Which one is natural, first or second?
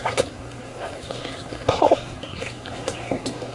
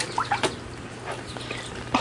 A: second